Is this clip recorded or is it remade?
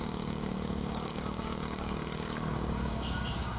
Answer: remade